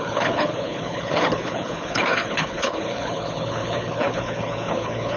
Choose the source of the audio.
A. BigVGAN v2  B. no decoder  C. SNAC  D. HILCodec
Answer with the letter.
D